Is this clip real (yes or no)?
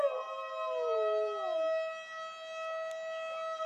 yes